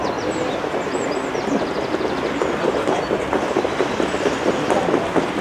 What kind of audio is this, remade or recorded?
recorded